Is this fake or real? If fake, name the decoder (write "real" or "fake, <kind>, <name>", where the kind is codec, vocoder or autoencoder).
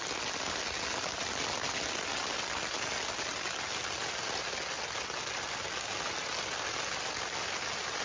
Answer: real